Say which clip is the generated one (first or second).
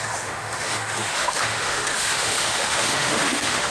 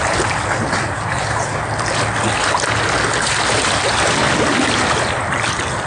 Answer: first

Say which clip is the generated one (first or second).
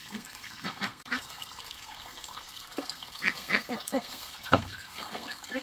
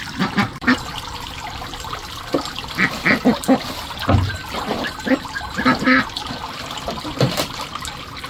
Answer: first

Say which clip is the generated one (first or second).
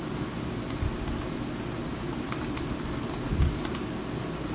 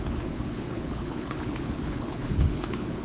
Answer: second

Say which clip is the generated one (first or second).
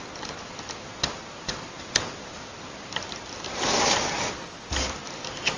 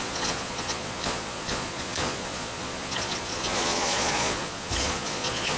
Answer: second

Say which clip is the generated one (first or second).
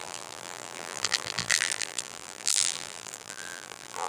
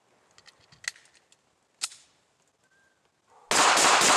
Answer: first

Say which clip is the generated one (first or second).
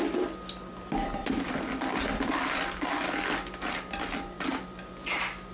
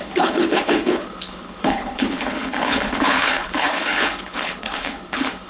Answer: second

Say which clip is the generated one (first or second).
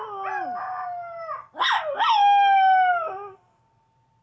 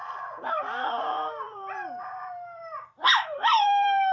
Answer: second